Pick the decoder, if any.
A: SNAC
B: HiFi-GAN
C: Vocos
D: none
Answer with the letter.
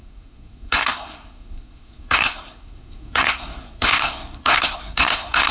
A